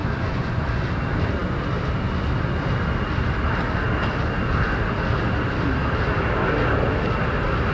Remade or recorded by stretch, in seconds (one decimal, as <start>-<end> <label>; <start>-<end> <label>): 0.0-0.8 remade; 0.8-7.7 recorded